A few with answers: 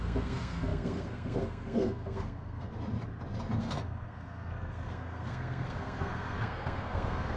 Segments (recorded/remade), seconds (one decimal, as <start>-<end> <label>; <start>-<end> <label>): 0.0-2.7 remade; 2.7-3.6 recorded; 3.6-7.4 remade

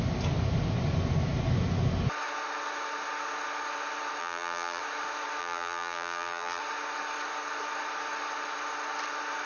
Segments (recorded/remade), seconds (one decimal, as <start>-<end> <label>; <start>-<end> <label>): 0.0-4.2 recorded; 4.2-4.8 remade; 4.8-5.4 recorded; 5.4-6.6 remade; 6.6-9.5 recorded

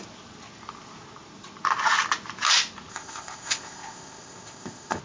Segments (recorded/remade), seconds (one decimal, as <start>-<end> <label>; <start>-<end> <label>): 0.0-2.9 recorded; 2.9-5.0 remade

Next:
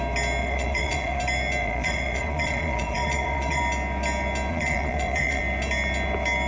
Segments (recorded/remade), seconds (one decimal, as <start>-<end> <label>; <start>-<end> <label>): 0.0-0.4 recorded; 0.4-1.2 remade; 1.2-1.6 recorded; 1.6-3.6 remade; 3.6-4.5 recorded; 4.5-5.4 remade; 5.4-6.5 recorded

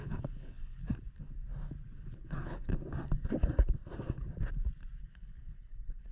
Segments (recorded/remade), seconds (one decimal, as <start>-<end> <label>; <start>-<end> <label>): 0.0-0.9 remade; 0.9-2.0 recorded; 2.0-2.7 remade; 2.7-5.0 recorded; 5.0-6.1 remade

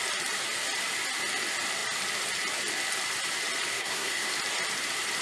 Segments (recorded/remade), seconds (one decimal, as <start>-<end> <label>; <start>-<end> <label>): 0.0-3.7 recorded; 3.7-4.3 remade; 4.3-5.2 recorded

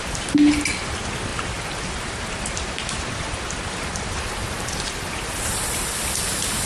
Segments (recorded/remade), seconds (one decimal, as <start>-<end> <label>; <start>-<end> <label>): 0.0-6.7 recorded

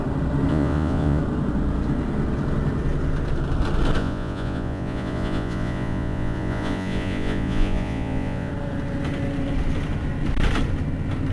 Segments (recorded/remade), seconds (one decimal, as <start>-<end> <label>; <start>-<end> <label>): 0.0-0.5 recorded; 0.5-1.2 remade; 1.2-4.0 recorded; 4.0-8.5 remade; 8.5-11.3 recorded